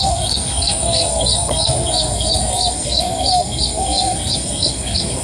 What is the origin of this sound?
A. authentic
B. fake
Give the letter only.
B